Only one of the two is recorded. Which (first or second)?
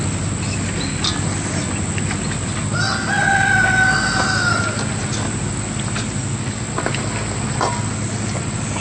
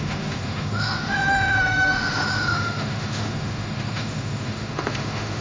first